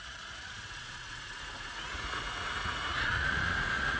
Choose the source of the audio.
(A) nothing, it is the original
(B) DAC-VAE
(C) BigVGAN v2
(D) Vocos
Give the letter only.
D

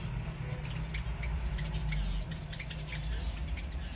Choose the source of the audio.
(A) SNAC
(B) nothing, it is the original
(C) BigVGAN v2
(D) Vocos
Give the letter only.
B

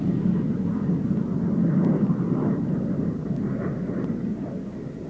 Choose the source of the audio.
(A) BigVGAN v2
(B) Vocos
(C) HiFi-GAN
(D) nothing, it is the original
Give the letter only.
D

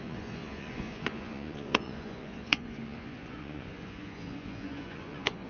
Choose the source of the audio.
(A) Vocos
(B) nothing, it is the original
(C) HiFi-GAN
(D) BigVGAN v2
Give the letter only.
A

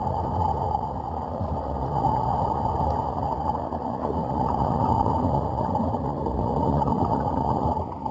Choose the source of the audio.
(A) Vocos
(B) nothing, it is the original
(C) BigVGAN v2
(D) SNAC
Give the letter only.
A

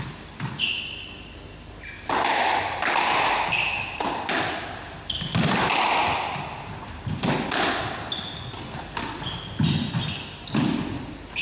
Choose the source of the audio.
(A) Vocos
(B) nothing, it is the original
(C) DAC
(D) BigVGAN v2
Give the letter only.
B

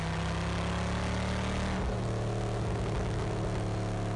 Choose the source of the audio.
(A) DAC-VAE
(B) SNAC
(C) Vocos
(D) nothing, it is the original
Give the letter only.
D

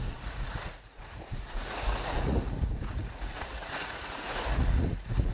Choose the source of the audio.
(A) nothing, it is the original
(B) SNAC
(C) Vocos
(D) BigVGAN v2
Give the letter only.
C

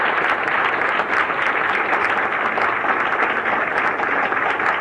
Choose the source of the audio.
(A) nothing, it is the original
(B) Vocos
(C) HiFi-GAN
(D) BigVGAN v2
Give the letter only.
A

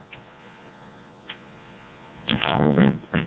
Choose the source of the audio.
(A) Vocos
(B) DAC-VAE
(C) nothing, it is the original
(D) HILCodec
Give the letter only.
A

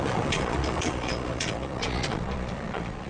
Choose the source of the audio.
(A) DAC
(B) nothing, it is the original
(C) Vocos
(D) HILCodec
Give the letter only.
C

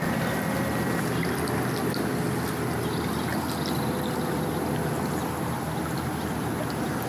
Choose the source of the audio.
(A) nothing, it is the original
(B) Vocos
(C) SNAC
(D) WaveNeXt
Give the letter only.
A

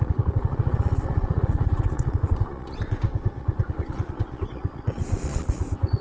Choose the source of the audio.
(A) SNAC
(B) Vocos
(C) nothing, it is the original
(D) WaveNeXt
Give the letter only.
B